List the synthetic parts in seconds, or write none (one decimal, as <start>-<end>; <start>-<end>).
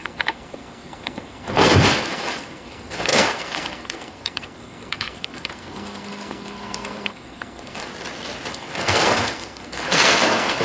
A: 0.0-7.9; 8.5-10.6